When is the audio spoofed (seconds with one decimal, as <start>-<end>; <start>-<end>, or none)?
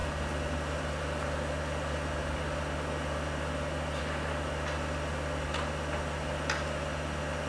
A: none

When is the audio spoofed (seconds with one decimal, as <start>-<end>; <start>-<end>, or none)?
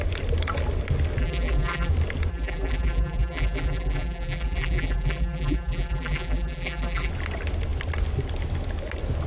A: 1.2-1.9; 2.3-7.1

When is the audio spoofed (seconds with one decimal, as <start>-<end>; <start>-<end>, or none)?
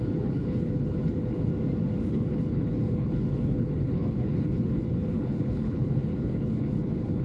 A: 0.0-1.5; 2.1-7.2